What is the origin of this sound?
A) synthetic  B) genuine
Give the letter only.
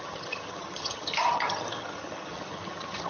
A